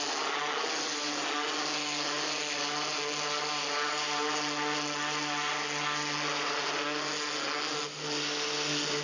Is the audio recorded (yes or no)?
yes